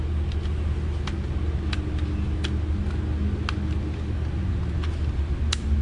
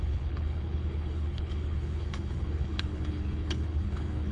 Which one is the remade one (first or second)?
second